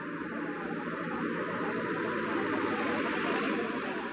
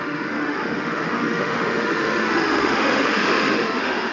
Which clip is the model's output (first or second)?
second